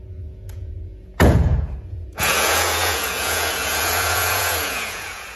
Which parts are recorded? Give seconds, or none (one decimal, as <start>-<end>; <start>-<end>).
none